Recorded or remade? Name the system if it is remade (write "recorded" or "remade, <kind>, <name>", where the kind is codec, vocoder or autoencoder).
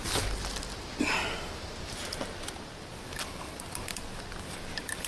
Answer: recorded